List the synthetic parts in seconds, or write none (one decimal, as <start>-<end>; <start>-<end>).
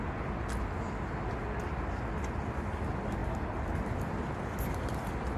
none